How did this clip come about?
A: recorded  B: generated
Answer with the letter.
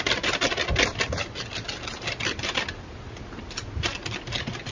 A